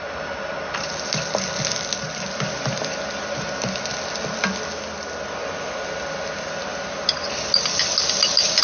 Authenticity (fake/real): real